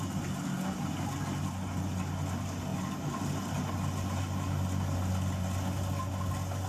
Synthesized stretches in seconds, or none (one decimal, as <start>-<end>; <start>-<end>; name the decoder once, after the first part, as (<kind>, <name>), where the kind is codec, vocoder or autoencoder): none